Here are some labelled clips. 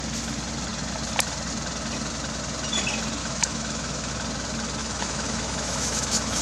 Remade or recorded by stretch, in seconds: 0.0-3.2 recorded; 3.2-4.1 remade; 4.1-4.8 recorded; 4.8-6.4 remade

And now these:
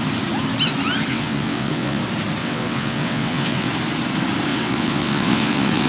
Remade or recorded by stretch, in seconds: 0.0-1.1 recorded; 1.1-2.0 remade; 2.0-2.4 recorded; 2.4-3.7 remade; 3.7-4.5 recorded; 4.5-5.9 remade

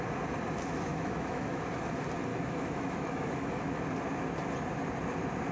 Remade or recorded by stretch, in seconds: 0.0-0.9 recorded; 0.9-1.7 remade; 1.7-2.3 recorded; 2.3-3.8 remade; 3.8-5.5 recorded

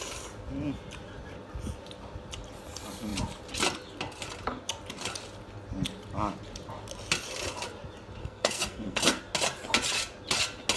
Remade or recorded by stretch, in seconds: 0.0-8.2 recorded; 8.2-9.2 remade; 9.2-10.8 recorded

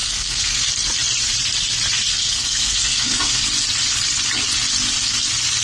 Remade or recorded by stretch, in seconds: 0.0-0.6 remade; 0.6-2.1 recorded; 2.1-3.4 remade; 3.4-5.6 recorded

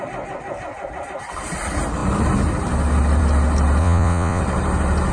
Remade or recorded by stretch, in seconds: 0.0-3.8 recorded; 3.8-4.4 remade; 4.4-5.1 recorded

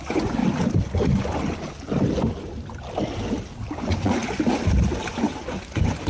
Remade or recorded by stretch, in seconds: 0.0-0.4 remade; 0.4-3.7 recorded; 3.7-4.2 remade; 4.2-5.1 recorded; 5.1-6.1 remade